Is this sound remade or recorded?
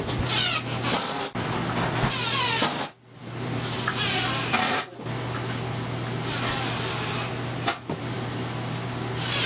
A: recorded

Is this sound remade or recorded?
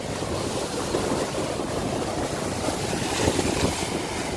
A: recorded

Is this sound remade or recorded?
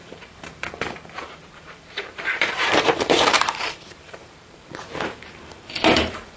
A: remade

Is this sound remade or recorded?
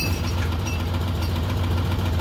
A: remade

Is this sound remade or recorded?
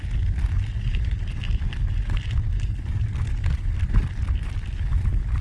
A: recorded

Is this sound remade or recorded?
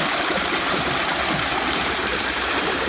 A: remade